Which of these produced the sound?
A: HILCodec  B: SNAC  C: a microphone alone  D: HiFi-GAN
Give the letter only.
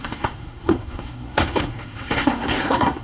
B